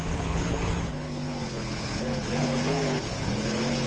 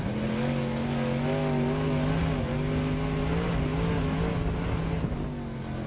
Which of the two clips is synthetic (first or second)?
first